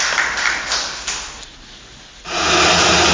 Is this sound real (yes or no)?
yes